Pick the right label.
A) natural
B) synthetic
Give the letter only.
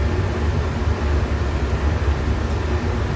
A